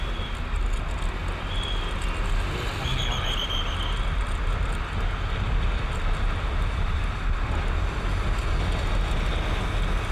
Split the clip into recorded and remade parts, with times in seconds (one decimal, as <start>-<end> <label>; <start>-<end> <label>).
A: 0.0-1.2 remade; 1.2-5.9 recorded; 5.9-7.0 remade; 7.0-10.1 recorded